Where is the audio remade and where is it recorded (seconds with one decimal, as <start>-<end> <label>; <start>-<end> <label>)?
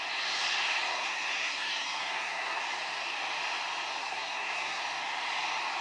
0.0-0.9 recorded; 0.9-2.6 remade; 2.6-4.0 recorded; 4.0-4.8 remade; 4.8-5.8 recorded